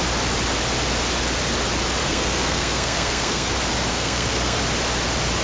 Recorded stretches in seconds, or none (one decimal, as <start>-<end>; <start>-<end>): 0.0-2.0; 3.5-3.9; 4.6-5.4